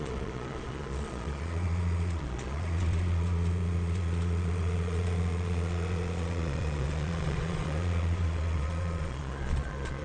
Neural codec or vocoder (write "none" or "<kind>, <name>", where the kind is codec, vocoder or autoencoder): vocoder, Vocos